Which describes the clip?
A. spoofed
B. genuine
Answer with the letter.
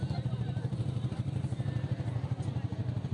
B